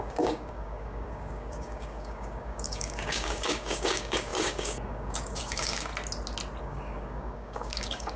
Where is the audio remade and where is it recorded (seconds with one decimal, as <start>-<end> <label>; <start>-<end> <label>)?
0.0-5.9 remade; 5.9-6.6 recorded; 6.6-8.2 remade